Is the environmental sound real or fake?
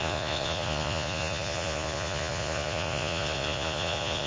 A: fake